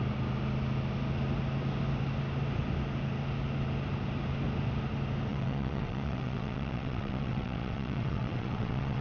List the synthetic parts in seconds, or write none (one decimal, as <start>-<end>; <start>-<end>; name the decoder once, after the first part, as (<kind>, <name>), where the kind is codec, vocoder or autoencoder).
5.3-9.0 (vocoder, WaveNeXt)